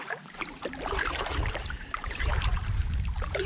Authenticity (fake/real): fake